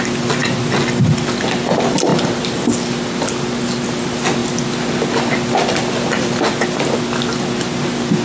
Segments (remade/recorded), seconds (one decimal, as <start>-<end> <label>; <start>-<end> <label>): 0.0-8.2 recorded